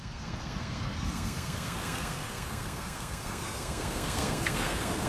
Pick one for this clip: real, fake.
fake